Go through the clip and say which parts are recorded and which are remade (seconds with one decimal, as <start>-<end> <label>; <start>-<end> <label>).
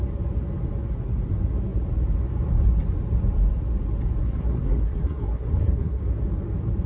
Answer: 0.0-4.2 recorded; 4.2-6.0 remade; 6.0-6.9 recorded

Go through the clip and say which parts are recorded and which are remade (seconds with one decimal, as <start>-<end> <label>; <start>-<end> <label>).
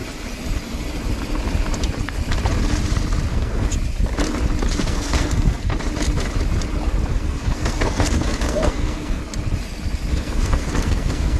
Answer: 0.0-3.3 recorded; 3.3-3.7 remade; 3.7-4.7 recorded; 4.7-5.7 remade; 5.7-7.1 recorded; 7.1-9.2 remade; 9.2-10.1 recorded; 10.1-11.4 remade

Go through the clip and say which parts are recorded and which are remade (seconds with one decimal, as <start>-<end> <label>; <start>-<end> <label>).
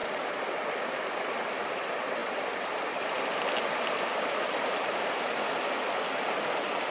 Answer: 0.0-6.9 recorded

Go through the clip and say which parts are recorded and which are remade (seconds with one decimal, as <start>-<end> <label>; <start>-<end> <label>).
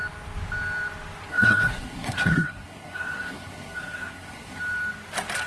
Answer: 0.0-1.3 recorded; 1.3-4.6 remade; 4.6-5.5 recorded